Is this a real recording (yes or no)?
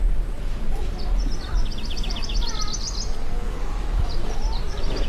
yes